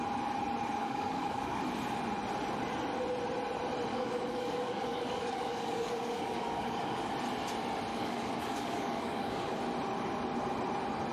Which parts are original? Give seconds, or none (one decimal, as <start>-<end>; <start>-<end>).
0.0-0.8; 1.6-3.9; 7.1-7.9; 9.6-11.1